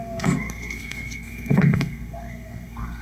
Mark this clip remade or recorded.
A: remade